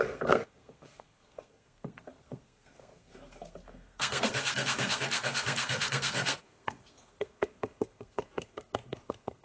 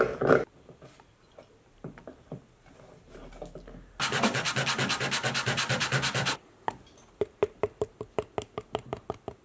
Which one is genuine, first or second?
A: second